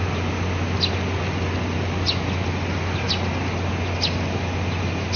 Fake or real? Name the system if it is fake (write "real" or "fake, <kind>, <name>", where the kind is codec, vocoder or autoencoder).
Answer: real